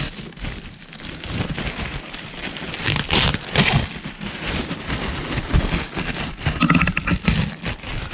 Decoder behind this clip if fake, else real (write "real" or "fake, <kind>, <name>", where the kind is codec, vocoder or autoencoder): real